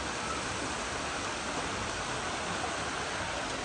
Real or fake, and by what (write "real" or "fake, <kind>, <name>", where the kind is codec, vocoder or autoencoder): real